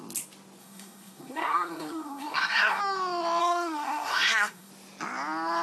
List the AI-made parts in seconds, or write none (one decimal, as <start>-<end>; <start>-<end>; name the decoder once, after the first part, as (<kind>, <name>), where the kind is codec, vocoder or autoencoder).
0.6-2.8 (codec, SNAC); 3.4-4.7

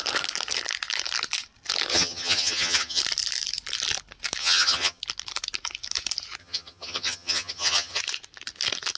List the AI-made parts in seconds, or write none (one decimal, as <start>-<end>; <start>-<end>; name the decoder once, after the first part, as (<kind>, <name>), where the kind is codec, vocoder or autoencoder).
1.9-3.0 (vocoder, HiFi-GAN); 4.4-5.0; 6.4-8.0

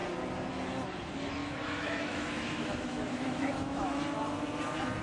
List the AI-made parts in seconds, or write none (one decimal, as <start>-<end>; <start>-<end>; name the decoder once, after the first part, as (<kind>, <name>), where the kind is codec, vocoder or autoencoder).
1.4-4.0 (autoencoder, DAC-VAE)

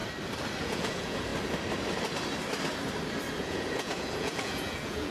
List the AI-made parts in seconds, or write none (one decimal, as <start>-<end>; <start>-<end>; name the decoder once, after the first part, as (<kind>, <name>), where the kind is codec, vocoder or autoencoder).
0.6-1.3 (vocoder, Vocos); 3.3-5.1

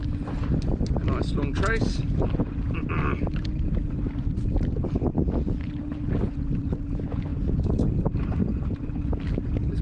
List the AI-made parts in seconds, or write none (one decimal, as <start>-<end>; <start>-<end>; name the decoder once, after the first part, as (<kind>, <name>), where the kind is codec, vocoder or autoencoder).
none

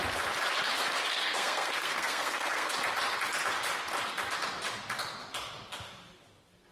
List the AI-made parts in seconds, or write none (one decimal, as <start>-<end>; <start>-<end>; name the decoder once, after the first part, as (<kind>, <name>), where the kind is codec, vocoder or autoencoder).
1.1-2.7 (codec, SNAC)

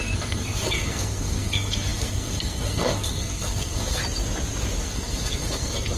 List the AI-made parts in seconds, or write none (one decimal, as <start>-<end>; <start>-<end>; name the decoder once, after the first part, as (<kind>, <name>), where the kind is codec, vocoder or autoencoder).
0.0-4.0 (codec, SNAC); 4.8-6.0